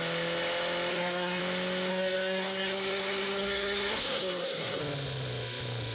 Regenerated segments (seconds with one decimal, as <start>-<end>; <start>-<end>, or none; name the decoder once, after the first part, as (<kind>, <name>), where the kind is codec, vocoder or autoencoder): 0.9-1.4 (codec, SNAC); 1.9-4.8